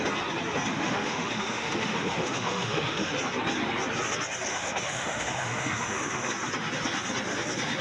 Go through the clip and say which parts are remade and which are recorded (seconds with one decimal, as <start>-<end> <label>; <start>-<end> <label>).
0.0-0.7 recorded; 0.7-3.1 remade; 3.1-4.5 recorded; 4.5-6.3 remade; 6.3-7.8 recorded